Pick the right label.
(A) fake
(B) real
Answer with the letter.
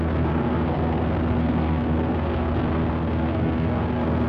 A